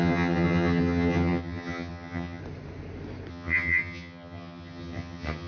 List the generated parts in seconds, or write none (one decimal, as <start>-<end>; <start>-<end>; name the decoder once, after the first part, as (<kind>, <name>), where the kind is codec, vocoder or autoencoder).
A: 0.0-2.4 (vocoder, HiFi-GAN); 3.3-5.5